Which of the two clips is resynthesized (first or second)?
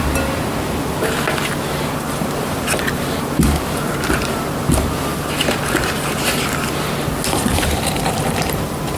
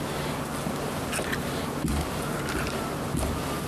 first